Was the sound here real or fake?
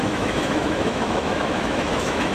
fake